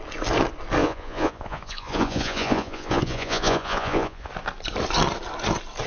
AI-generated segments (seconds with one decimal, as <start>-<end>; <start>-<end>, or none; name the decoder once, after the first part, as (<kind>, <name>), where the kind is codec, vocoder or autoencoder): 0.8-4.3 (vocoder, Vocos)